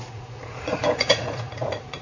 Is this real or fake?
fake